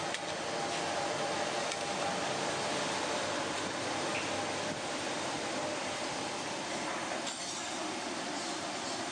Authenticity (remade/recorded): recorded